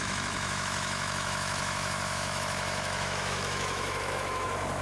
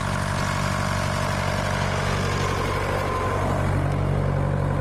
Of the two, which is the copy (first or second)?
first